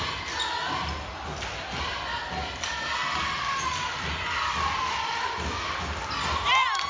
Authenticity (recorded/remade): recorded